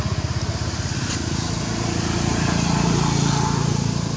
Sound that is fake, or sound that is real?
real